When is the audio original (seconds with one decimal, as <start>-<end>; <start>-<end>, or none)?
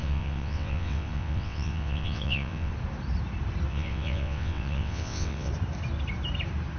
2.7-3.7; 5.5-6.8